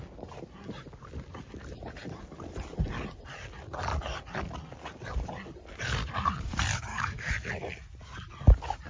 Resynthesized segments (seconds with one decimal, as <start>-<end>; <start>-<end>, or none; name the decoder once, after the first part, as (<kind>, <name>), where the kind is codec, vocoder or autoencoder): 6.9-7.5 (codec, DAC)